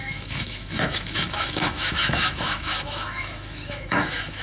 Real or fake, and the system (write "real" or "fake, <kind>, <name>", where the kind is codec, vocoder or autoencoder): fake, autoencoder, DAC-VAE